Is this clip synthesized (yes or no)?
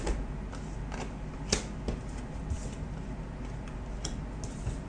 no